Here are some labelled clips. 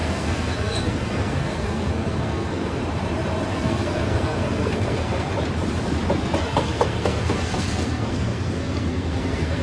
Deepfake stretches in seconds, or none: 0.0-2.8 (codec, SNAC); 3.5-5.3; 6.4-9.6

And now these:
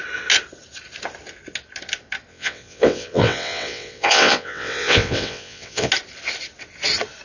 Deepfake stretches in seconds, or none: 2.3-5.9 (vocoder, WaveNeXt)